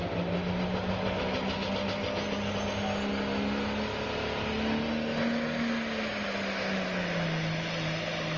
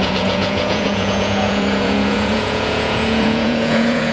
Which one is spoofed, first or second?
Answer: second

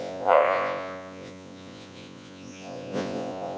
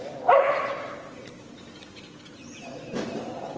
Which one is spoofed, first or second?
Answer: first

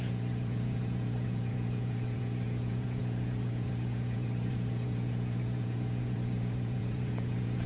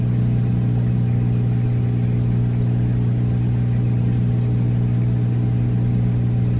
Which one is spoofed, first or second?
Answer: first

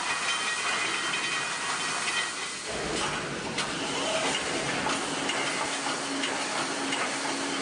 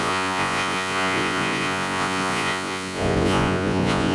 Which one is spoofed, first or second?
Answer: second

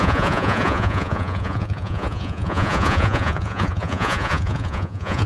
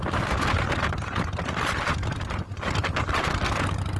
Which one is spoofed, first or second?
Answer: first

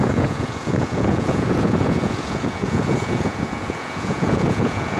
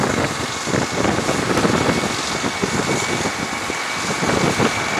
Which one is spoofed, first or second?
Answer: first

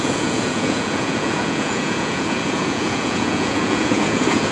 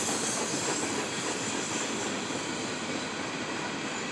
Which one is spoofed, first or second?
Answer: first